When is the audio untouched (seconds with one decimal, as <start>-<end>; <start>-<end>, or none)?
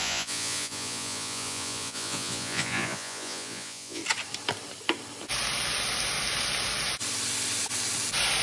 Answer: 4.0-8.4